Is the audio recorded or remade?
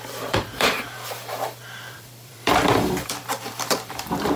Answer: remade